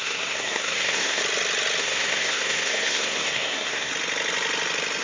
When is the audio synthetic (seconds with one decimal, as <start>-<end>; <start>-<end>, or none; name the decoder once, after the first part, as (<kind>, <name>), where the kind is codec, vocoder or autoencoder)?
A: 0.0-1.2 (codec, SNAC); 1.8-3.9